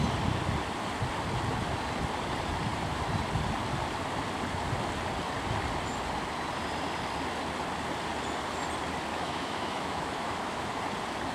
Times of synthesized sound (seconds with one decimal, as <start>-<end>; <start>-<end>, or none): 9.1-10.8